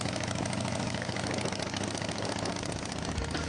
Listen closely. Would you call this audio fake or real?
fake